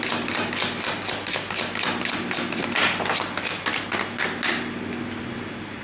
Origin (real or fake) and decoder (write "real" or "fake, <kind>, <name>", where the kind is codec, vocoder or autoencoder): real